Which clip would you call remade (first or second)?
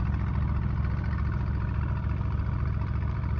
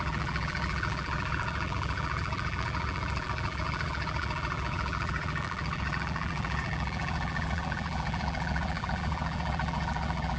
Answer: second